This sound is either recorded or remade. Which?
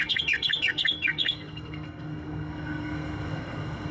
remade